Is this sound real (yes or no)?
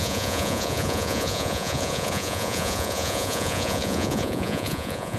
no